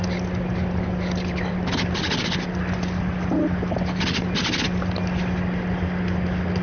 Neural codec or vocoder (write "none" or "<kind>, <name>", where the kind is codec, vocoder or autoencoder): none